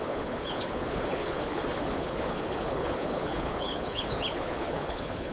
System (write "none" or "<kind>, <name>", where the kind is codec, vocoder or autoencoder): codec, HILCodec